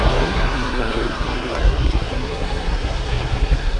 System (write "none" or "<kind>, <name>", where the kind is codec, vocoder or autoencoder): codec, SNAC